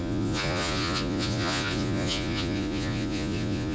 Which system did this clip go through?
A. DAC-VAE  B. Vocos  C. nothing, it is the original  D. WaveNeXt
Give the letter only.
B